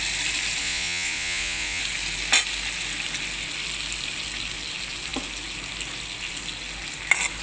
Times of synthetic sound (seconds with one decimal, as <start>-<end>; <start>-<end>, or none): 0.6-1.8